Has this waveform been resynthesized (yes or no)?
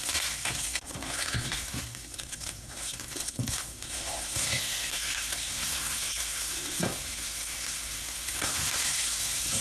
yes